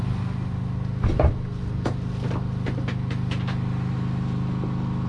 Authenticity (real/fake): real